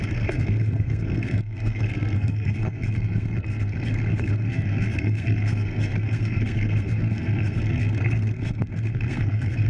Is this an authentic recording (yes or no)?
no